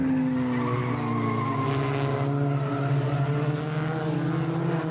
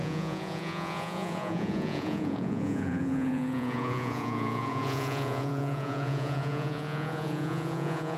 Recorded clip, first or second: first